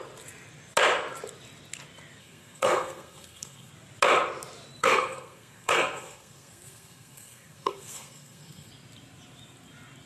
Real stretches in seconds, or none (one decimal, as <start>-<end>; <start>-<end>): 0.0-2.2; 3.7-4.8; 8.7-10.1